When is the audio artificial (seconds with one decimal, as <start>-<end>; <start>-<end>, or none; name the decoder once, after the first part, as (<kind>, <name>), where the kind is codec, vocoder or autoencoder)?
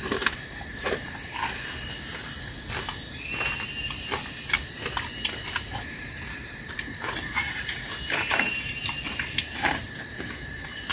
0.0-1.4 (vocoder, BigVGAN v2); 5.5-10.9